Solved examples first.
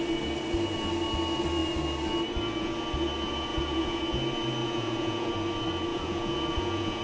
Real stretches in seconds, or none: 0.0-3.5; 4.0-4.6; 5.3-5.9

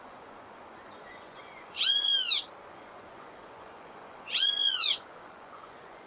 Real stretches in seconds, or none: 2.1-2.7

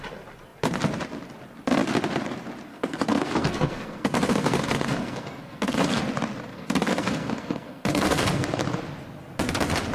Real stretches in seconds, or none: 0.0-2.7; 6.0-6.5; 8.6-9.9

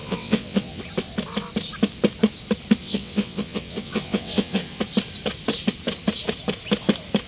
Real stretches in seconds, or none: 0.8-2.8; 4.8-7.3

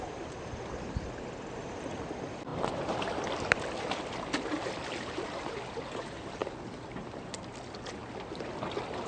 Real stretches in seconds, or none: 0.0-9.1

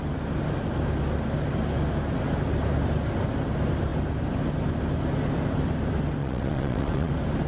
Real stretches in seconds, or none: 0.0-6.2; 7.1-7.5

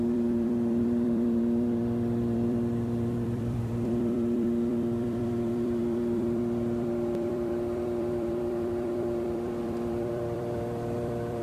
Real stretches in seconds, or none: none

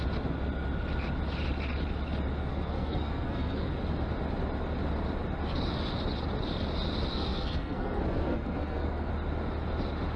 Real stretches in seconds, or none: 0.0-2.5; 3.7-7.1; 9.1-10.2